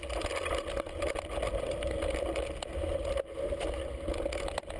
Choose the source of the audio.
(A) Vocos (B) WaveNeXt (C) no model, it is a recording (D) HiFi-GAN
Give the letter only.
C